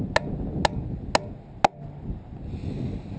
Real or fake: real